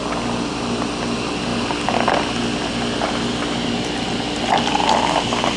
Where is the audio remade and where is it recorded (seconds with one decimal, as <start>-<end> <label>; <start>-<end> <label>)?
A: 0.0-5.6 recorded